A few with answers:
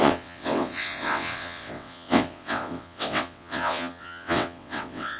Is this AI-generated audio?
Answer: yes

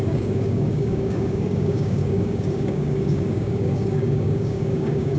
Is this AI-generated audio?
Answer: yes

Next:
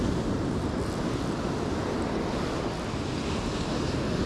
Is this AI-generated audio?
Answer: no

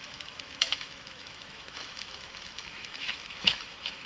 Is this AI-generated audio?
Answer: yes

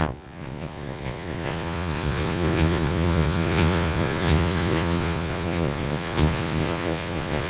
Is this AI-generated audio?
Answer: yes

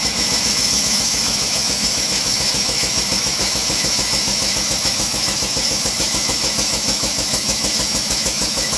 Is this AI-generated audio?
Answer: yes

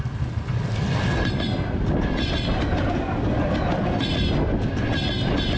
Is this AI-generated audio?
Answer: no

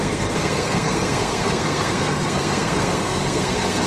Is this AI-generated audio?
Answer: yes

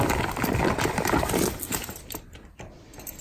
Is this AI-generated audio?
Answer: no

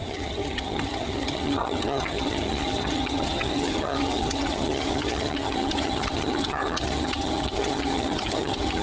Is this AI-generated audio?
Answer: yes